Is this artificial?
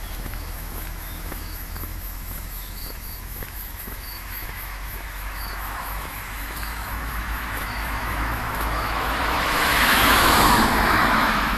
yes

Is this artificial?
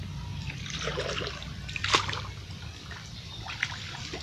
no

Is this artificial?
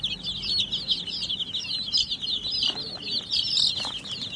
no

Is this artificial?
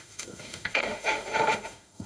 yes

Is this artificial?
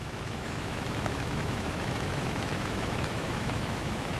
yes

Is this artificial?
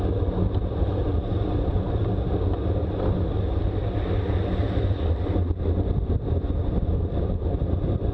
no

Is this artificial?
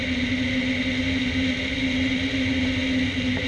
no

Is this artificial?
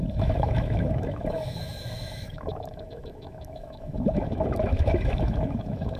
yes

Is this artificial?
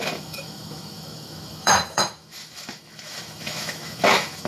yes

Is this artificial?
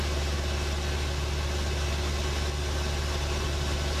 no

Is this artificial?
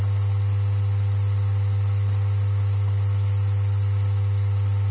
no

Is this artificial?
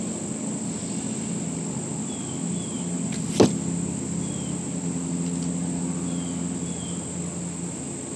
no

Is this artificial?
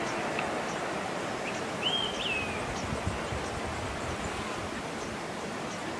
no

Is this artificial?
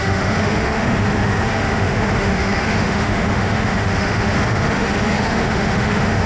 yes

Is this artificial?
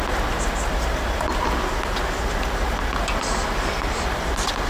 no